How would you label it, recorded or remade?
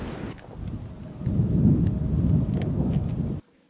recorded